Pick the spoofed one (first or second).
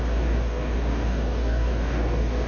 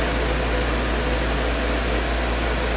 first